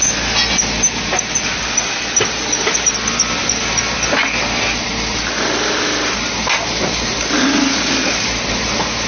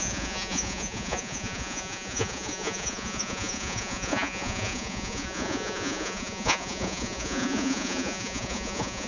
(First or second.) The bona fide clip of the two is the first